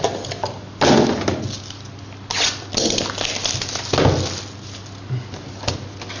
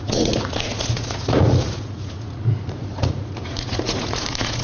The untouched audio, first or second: first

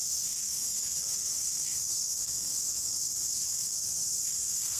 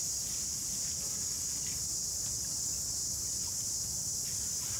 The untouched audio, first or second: second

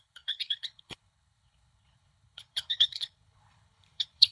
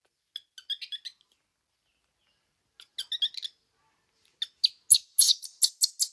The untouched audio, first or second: second